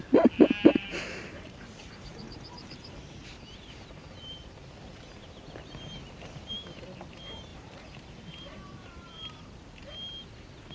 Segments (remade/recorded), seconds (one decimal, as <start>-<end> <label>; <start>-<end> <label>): 0.0-0.9 recorded; 0.9-4.9 remade; 4.9-7.5 recorded; 7.5-9.7 remade; 9.7-10.7 recorded